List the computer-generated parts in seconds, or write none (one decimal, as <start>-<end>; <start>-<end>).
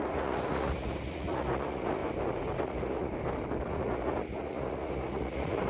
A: 0.0-2.0; 2.6-3.1; 3.6-5.7